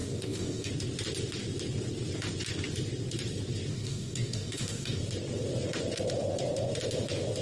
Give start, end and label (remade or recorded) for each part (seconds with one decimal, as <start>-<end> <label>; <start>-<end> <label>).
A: 0.0-0.7 remade; 0.7-3.7 recorded; 3.7-5.0 remade; 5.0-7.4 recorded